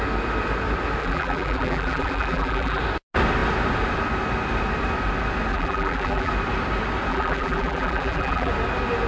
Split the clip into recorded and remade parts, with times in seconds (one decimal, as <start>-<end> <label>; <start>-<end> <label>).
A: 0.0-1.0 recorded; 1.0-2.8 remade; 2.8-5.5 recorded; 5.5-6.3 remade; 6.3-7.1 recorded; 7.1-8.5 remade; 8.5-9.1 recorded